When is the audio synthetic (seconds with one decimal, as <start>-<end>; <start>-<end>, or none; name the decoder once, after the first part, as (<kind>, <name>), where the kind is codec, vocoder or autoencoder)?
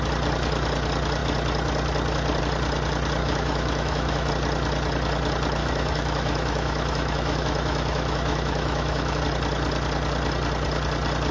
3.2-4.3 (autoencoder, DAC-VAE); 5.6-9.2